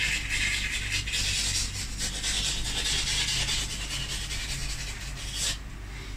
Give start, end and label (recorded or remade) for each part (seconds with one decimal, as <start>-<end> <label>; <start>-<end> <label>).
0.0-6.2 recorded